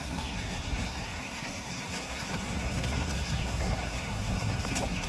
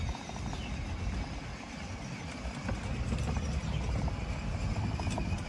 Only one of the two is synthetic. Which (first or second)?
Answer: first